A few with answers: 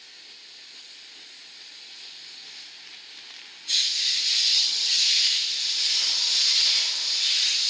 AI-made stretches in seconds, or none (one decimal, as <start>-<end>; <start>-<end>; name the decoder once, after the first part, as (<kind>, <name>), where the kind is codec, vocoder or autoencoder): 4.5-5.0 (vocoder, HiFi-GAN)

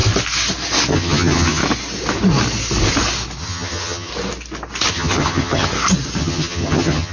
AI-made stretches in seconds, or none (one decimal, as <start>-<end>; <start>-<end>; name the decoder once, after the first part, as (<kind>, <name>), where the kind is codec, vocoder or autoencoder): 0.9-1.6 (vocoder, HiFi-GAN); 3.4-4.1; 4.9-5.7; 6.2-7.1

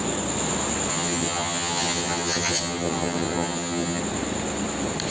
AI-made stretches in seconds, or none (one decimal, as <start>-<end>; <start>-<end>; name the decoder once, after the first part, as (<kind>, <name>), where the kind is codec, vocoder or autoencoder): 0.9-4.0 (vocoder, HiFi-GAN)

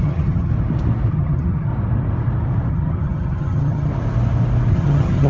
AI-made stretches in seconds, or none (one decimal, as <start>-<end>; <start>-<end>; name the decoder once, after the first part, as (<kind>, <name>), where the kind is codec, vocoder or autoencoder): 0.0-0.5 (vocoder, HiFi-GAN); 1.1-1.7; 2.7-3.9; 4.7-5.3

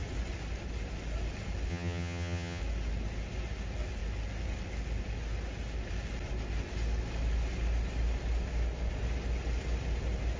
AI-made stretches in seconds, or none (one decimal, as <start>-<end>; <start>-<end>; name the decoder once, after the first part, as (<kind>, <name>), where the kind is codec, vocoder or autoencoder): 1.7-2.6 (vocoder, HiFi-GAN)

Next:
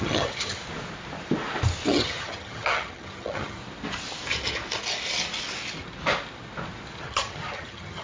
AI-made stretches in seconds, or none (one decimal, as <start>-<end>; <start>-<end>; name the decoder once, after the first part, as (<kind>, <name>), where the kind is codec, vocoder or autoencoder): 0.0-0.6 (vocoder, HiFi-GAN); 1.9-3.6; 7.0-8.0

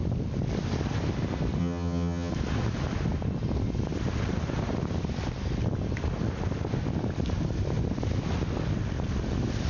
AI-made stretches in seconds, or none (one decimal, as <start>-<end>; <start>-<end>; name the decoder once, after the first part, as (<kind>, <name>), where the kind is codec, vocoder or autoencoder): 1.6-2.3 (vocoder, HiFi-GAN)

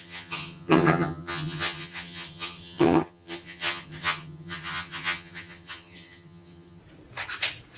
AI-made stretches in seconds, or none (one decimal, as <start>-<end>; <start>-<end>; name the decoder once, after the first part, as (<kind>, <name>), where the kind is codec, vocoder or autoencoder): 0.0-6.8 (vocoder, HiFi-GAN)